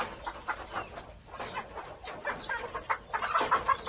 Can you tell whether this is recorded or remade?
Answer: recorded